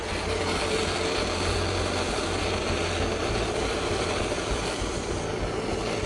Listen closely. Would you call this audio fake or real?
fake